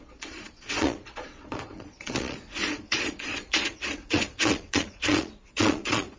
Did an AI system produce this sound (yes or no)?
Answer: yes